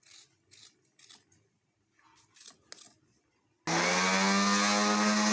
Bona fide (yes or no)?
yes